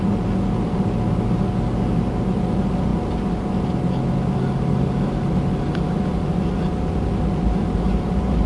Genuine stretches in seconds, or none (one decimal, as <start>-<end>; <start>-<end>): 0.0-8.5